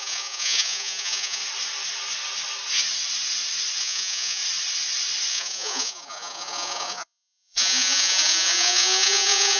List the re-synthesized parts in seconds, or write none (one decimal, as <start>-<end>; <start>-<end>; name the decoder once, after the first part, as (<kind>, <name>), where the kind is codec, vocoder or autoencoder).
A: 0.0-1.4 (vocoder, Vocos); 3.8-4.4; 5.3-9.6